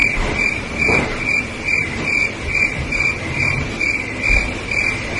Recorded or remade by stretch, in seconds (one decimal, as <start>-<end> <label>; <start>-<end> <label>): 0.0-5.2 recorded